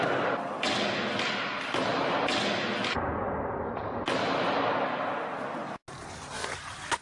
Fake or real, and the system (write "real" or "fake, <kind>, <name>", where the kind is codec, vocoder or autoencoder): real